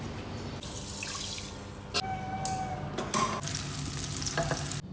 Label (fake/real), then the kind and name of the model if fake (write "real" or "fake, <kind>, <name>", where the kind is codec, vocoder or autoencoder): real